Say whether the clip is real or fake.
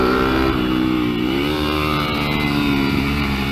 fake